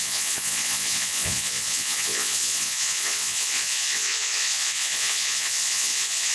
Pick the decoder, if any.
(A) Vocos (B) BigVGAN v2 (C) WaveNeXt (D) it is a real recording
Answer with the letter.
A